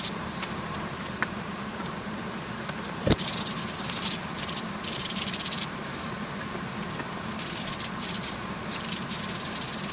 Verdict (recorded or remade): remade